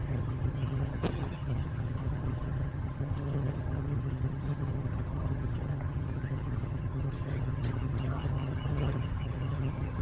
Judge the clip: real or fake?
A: fake